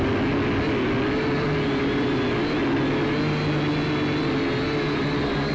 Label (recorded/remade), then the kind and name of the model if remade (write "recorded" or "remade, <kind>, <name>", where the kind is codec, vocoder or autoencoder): recorded